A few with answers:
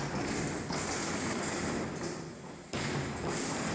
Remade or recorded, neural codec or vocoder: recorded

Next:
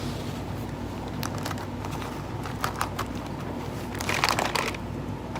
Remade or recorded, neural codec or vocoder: recorded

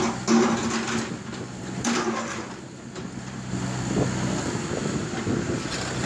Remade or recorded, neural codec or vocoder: recorded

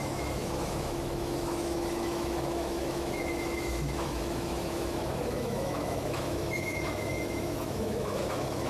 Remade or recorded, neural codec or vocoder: remade, autoencoder, DAC-VAE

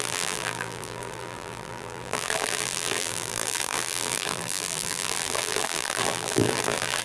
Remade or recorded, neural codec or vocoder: remade, vocoder, BigVGAN v2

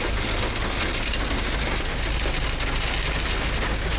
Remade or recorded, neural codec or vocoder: recorded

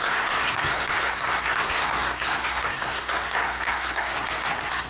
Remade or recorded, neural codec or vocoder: remade, codec, SNAC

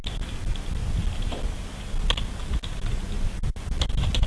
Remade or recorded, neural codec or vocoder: recorded